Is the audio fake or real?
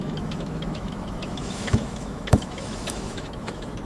fake